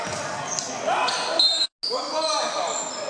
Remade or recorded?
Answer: recorded